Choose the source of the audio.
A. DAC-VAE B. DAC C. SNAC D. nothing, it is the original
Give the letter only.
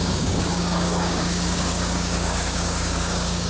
B